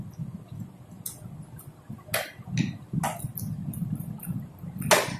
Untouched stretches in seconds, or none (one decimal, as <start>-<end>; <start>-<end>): 0.0-5.2